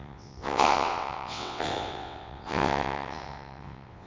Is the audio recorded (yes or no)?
no